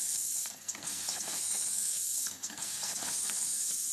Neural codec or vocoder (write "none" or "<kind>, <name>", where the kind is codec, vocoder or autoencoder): codec, SNAC